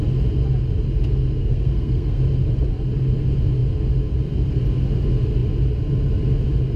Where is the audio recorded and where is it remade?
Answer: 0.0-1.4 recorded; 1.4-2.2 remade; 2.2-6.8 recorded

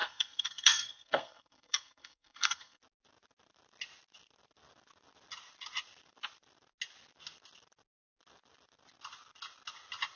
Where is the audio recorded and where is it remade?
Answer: 0.0-2.8 remade; 2.8-10.2 recorded